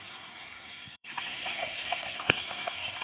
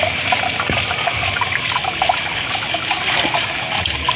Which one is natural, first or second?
second